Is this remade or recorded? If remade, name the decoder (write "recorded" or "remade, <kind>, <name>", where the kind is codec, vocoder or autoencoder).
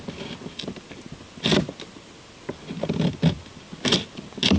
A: recorded